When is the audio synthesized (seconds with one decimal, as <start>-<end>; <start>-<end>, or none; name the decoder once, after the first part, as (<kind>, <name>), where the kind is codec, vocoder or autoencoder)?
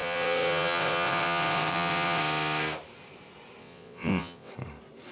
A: 0.0-2.2 (vocoder, WaveNeXt); 3.6-4.5